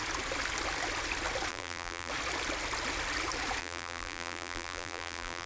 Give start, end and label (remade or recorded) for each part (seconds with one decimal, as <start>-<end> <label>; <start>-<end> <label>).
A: 0.0-1.5 recorded; 1.5-2.1 remade; 2.1-3.6 recorded; 3.6-5.5 remade